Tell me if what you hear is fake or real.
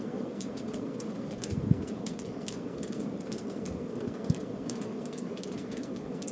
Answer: fake